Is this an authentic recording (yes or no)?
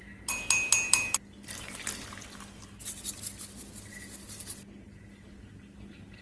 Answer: yes